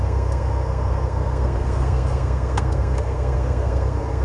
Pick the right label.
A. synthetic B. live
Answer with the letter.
A